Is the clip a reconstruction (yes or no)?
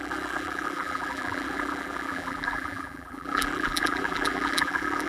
yes